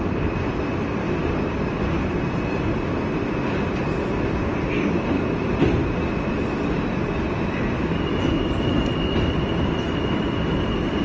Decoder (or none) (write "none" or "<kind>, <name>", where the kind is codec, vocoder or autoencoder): none